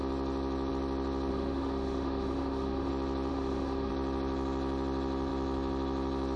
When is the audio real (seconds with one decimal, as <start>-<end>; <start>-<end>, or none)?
0.0-1.3; 2.9-3.3; 3.9-6.4